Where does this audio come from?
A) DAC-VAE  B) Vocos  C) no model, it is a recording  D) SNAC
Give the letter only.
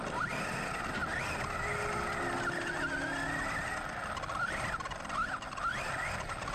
C